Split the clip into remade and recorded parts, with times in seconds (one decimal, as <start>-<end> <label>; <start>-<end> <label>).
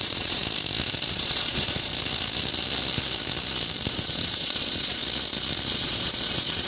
0.0-0.4 remade; 0.4-1.1 recorded; 1.1-1.9 remade; 1.9-3.9 recorded; 3.9-5.0 remade; 5.0-5.7 recorded; 5.7-6.7 remade